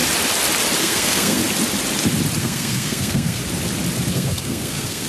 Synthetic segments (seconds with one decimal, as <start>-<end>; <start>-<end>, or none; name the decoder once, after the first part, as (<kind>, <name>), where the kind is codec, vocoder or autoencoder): 0.8-1.4 (codec, SNAC); 2.4-3.4; 4.1-5.1